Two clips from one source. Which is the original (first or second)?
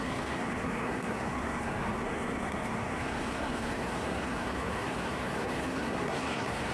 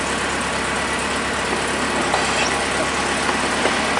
second